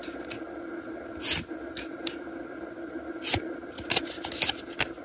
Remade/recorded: recorded